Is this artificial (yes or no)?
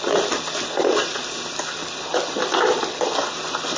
no